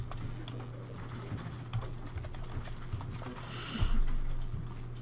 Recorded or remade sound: recorded